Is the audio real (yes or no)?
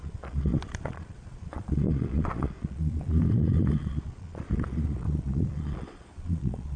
no